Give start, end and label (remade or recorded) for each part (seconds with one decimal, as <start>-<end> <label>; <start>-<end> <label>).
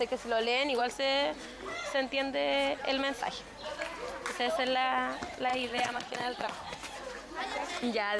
0.0-5.5 recorded; 5.5-6.5 remade; 6.5-8.2 recorded